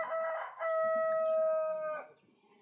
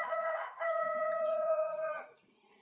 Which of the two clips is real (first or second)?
first